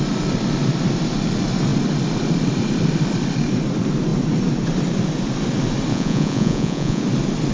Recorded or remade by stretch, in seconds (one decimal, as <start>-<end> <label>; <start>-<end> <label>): 0.0-5.9 recorded; 5.9-7.0 remade; 7.0-7.5 recorded